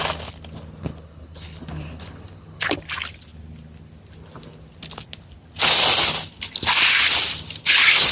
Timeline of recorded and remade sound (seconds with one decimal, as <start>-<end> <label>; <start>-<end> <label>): 0.0-0.8 recorded; 0.8-2.8 remade; 2.8-8.1 recorded